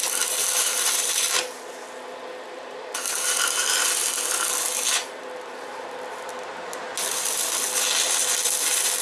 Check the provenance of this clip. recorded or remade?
recorded